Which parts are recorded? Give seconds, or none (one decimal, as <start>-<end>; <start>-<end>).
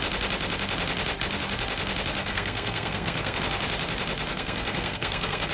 0.0-2.2; 3.4-4.3